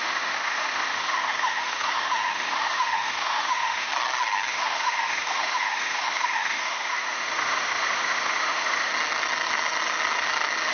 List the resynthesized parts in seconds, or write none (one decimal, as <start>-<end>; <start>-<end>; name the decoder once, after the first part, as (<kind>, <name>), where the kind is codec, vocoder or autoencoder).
0.0-3.9 (autoencoder, DAC-VAE); 4.5-8.9